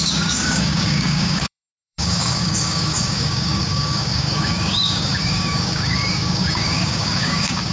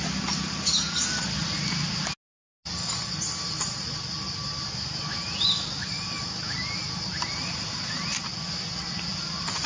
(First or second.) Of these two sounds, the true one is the second